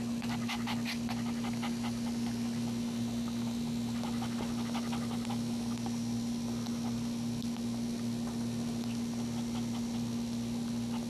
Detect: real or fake real